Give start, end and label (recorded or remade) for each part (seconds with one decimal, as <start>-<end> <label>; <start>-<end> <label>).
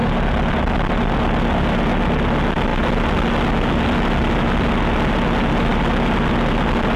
0.0-0.5 remade; 0.5-7.0 recorded